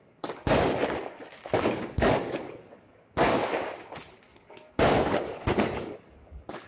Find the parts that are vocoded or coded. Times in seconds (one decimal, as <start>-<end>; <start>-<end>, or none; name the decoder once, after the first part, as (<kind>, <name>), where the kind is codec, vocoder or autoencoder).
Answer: 0.0-3.4 (codec, DAC); 4.1-6.7